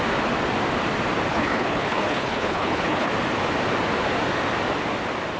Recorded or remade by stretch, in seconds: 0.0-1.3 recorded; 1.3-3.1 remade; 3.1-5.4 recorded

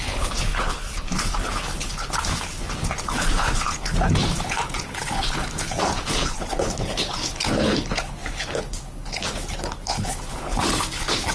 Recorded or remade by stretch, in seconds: 0.0-11.3 remade

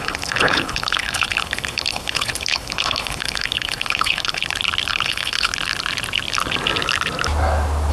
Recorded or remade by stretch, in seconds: 0.0-4.4 remade; 4.4-4.9 recorded; 4.9-5.5 remade; 5.5-7.9 recorded